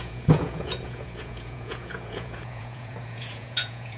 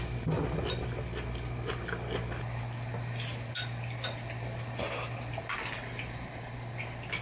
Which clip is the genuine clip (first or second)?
second